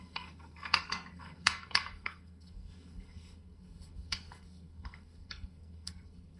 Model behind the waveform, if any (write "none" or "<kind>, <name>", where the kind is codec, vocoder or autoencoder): codec, SNAC